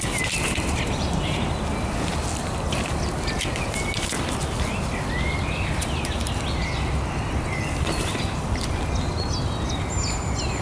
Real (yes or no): yes